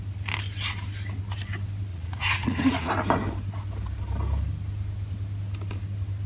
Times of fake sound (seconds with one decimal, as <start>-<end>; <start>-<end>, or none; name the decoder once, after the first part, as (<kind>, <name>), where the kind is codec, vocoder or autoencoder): 1.9-2.9 (vocoder, Vocos)